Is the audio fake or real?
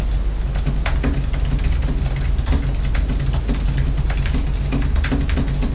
real